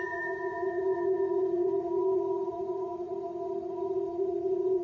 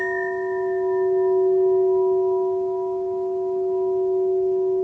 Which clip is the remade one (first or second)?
first